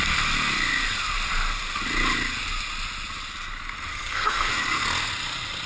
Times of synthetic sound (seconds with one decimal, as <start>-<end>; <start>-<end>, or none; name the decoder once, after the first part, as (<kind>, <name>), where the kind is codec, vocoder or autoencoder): 3.9-4.5 (codec, SNAC)